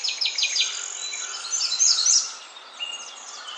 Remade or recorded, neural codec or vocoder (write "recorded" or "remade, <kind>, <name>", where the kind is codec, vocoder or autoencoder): recorded